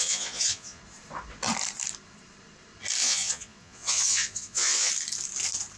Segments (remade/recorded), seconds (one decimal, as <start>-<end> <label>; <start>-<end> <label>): 0.0-0.8 remade; 0.8-3.0 recorded; 3.0-4.9 remade; 4.9-5.8 recorded